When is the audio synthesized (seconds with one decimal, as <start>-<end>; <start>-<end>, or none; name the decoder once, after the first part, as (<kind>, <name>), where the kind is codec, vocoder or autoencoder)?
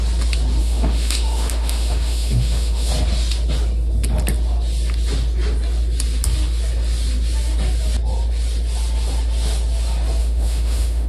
0.6-2.9 (autoencoder, DAC-VAE); 10.2-11.1